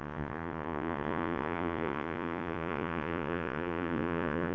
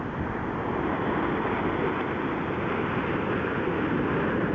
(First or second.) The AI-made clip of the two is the first